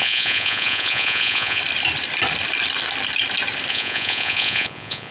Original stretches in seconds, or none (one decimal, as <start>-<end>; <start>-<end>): 1.6-3.7